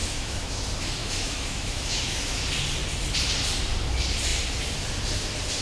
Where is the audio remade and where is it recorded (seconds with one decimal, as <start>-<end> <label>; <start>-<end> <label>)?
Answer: 0.0-0.6 remade; 0.6-1.0 recorded; 1.0-2.4 remade; 2.4-5.6 recorded